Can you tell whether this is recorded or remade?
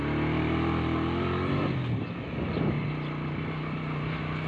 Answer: recorded